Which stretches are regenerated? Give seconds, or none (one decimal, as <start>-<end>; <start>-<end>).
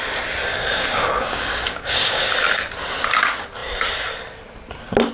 0.5-2.3